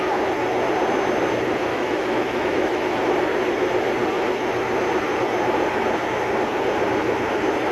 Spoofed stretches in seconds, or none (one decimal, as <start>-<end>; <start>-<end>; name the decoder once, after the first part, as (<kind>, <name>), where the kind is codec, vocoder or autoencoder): 1.7-3.0 (autoencoder, DAC-VAE)